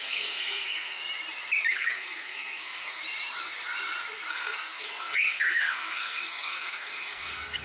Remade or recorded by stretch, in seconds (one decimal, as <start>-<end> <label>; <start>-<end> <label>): 0.0-1.0 remade; 1.0-1.7 recorded; 1.7-3.0 remade; 3.0-4.3 recorded; 4.3-7.6 remade